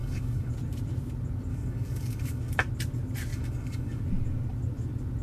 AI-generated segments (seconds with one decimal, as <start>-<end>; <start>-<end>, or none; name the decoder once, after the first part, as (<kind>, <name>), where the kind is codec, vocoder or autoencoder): 0.0-0.5 (codec, DAC); 1.5-2.5; 3.3-4.0